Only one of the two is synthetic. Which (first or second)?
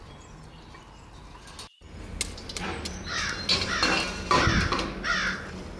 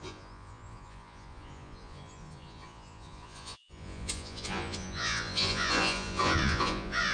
second